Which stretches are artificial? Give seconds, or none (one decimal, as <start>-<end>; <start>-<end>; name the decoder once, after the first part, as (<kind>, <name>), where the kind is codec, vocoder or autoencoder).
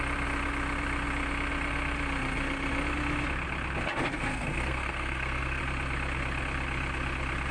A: 4.0-5.6 (codec, SNAC)